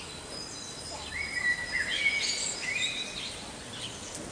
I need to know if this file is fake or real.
real